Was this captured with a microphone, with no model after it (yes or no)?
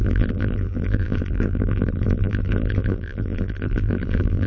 no